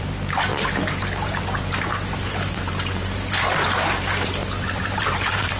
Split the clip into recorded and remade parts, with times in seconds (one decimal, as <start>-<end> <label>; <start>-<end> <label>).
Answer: 0.0-0.5 remade; 0.5-1.4 recorded; 1.4-5.6 remade